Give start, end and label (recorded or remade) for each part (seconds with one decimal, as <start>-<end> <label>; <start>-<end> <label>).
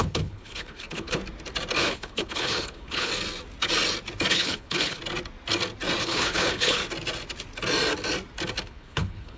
0.0-1.2 remade; 1.2-1.8 recorded; 1.8-3.1 remade; 3.1-4.3 recorded; 4.3-5.0 remade; 5.0-6.0 recorded; 6.0-6.8 remade; 6.8-8.6 recorded; 8.6-9.4 remade